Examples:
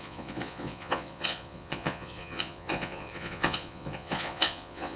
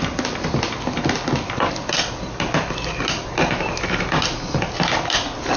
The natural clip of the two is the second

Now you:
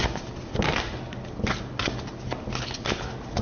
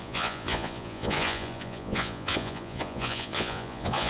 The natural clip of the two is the first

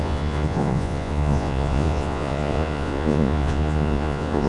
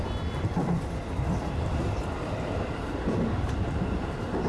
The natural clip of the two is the second